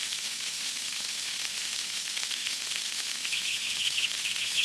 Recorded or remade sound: remade